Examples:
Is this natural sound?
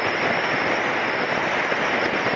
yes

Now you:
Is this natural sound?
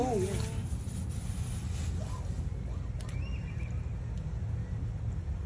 yes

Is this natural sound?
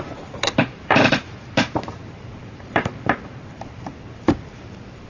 no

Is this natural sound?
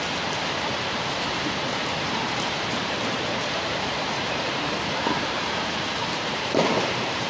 no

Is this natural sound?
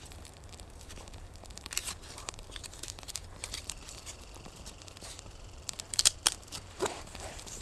no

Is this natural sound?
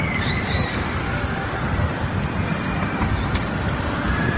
yes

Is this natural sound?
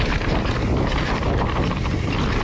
yes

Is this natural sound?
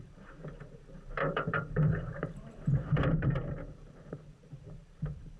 no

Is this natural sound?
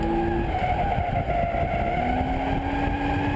yes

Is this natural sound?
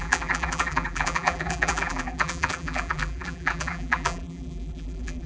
no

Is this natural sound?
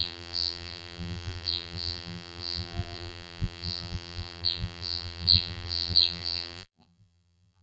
no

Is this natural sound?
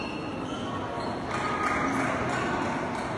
yes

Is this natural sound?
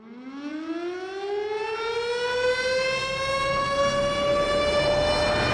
yes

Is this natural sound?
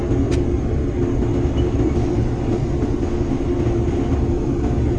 yes